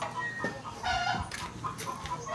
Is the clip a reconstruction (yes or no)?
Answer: no